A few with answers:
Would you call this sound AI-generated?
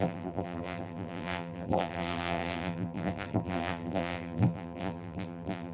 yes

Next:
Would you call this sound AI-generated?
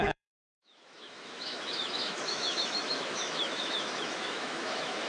yes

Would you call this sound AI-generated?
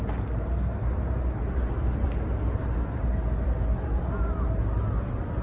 no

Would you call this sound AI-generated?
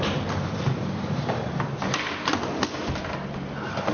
no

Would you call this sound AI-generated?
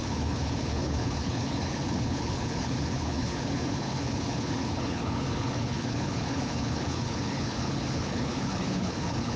yes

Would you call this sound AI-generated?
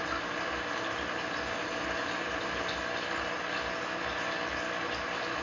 no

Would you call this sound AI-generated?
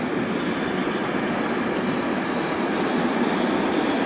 no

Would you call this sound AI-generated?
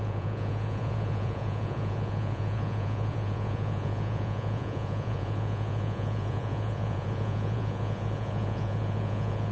yes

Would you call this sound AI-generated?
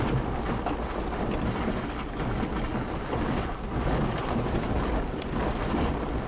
no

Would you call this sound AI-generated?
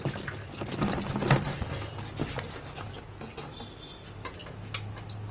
no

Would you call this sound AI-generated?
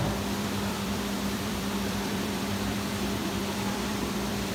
yes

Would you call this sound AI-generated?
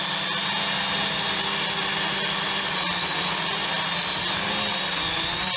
no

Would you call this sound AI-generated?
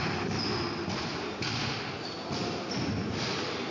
no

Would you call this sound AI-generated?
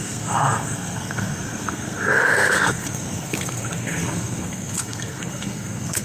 yes